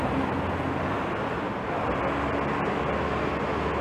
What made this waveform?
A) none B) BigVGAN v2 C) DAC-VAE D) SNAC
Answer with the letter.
A